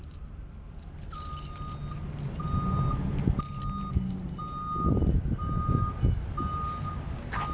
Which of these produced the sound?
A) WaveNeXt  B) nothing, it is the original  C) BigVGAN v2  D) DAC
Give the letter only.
B